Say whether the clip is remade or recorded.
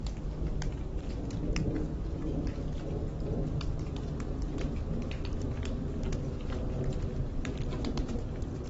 recorded